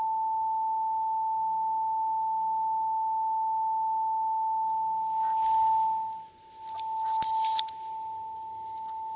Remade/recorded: recorded